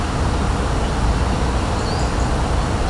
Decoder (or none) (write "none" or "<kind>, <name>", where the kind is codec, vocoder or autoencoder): none